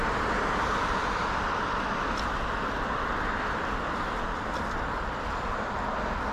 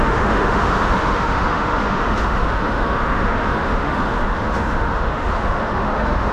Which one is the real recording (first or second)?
first